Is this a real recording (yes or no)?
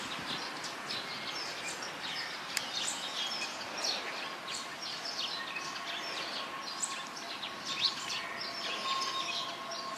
yes